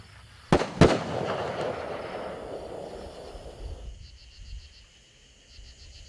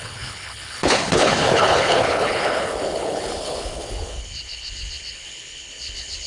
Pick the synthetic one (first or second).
second